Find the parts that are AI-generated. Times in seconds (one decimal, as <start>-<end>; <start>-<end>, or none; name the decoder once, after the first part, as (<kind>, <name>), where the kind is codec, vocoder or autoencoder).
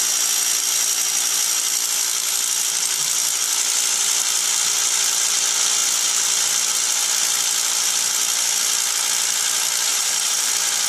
9.9-10.5 (vocoder, BigVGAN v2)